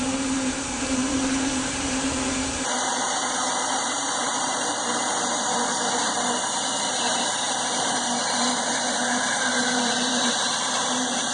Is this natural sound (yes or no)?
no